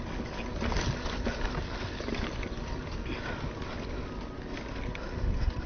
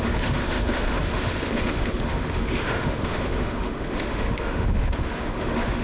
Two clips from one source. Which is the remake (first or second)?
second